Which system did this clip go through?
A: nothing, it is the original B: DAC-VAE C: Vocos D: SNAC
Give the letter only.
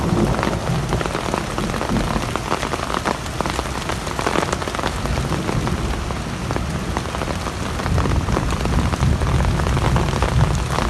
A